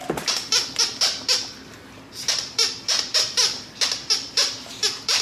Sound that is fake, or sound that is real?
fake